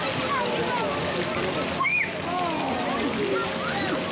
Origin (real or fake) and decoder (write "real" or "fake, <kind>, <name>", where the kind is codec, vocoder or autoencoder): real